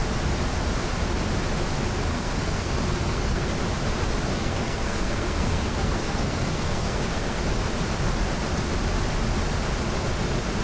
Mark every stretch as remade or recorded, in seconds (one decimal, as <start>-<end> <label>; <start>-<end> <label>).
0.0-2.1 recorded; 2.1-3.5 remade; 3.5-4.3 recorded; 4.3-7.4 remade; 7.4-10.6 recorded